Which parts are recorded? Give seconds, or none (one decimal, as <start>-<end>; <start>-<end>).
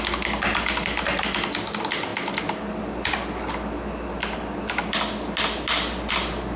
0.0-6.6